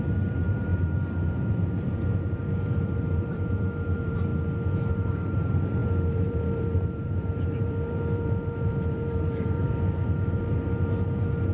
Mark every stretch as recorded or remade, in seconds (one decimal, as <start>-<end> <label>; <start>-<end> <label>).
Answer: 0.0-4.3 remade; 4.3-4.9 recorded; 4.9-11.5 remade